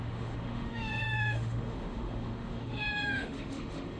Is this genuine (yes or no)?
no